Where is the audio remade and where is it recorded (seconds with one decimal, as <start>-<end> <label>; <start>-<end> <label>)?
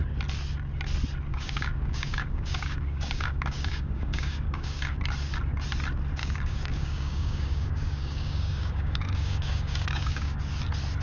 0.0-1.3 recorded; 1.3-5.0 remade; 5.0-6.2 recorded; 6.2-10.4 remade; 10.4-11.0 recorded